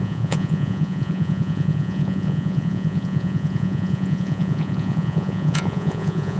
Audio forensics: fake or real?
fake